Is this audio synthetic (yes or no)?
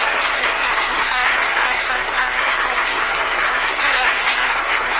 yes